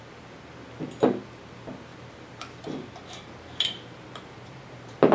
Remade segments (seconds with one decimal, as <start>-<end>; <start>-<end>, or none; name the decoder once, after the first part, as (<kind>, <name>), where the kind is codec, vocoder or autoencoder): none